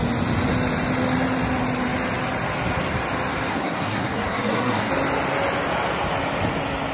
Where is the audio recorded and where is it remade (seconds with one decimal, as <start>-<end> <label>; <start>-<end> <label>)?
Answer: 0.0-3.5 recorded; 3.5-4.9 remade; 4.9-6.9 recorded